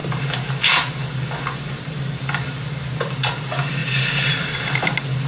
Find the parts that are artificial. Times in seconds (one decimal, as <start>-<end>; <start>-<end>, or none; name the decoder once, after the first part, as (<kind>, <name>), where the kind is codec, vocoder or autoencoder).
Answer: none